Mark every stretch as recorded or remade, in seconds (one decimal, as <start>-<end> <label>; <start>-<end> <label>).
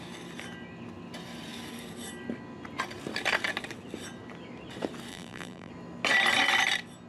0.0-5.1 recorded; 5.1-5.7 remade; 5.7-7.1 recorded